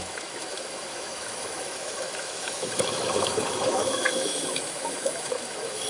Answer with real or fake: fake